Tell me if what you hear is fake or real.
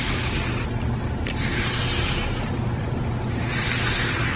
real